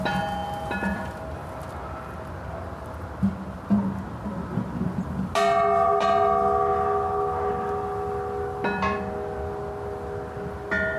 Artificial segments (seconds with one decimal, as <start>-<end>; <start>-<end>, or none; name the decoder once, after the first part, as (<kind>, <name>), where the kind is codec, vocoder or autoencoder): none